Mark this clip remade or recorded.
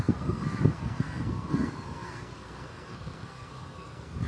remade